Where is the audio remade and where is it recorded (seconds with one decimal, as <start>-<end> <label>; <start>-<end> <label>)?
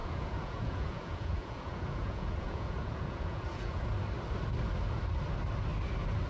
0.0-3.8 remade; 3.8-6.3 recorded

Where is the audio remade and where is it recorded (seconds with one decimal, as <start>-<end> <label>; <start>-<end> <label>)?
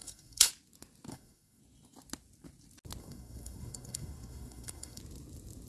0.0-0.5 remade; 0.5-1.1 recorded; 1.1-1.6 remade; 1.6-3.0 recorded; 3.0-5.0 remade; 5.0-5.7 recorded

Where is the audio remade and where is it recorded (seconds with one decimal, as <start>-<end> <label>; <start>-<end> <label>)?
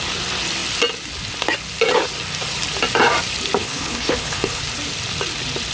0.0-3.6 recorded; 3.6-4.6 remade; 4.6-5.7 recorded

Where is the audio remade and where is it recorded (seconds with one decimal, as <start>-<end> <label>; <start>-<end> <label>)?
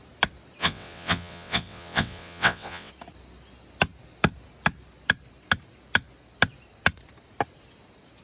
0.0-0.6 recorded; 0.6-2.9 remade; 2.9-8.2 recorded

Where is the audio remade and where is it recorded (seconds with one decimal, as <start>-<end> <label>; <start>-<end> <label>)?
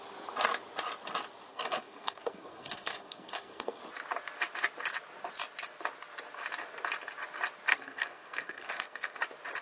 0.0-1.5 recorded; 1.5-3.8 remade; 3.8-7.7 recorded; 7.7-9.2 remade; 9.2-9.6 recorded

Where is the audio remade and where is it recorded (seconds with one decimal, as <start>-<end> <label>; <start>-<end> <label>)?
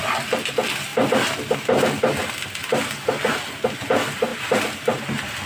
0.0-2.6 recorded; 2.6-3.1 remade; 3.1-4.3 recorded; 4.3-5.5 remade